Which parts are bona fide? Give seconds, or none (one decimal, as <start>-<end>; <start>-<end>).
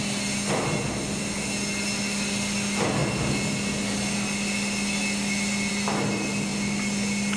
0.0-7.4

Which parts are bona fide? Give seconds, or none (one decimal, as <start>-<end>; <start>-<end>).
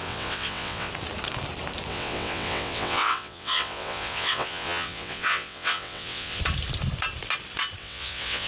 0.9-1.9; 6.4-7.8